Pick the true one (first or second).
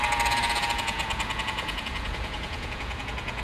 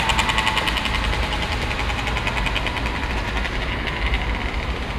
second